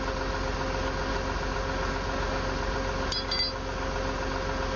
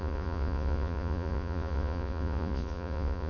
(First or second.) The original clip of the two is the first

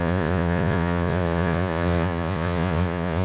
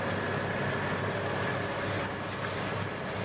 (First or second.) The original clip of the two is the second